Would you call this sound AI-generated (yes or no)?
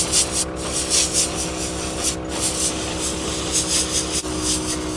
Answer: no